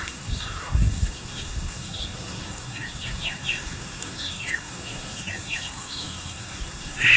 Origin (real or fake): fake